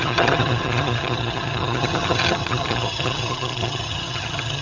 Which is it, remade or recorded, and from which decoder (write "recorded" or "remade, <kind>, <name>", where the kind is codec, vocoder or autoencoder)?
remade, vocoder, HiFi-GAN